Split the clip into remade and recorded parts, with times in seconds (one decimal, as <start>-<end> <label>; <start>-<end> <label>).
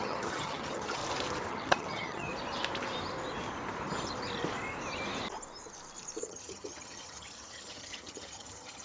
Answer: 0.0-1.0 remade; 1.0-1.5 recorded; 1.5-2.3 remade; 2.3-6.2 recorded; 6.2-8.8 remade